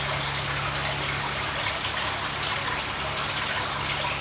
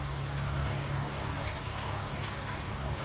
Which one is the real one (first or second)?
first